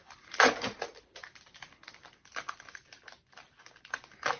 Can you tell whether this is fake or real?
real